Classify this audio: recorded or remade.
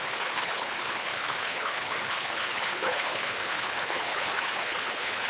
remade